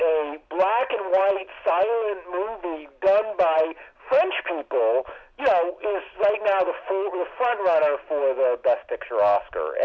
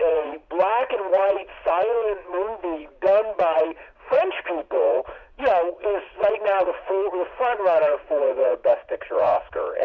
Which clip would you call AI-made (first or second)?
second